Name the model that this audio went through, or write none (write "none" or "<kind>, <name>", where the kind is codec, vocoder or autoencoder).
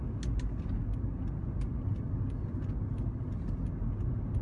none